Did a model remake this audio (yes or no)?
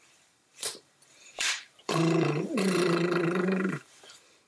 yes